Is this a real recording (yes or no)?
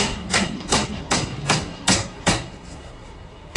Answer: no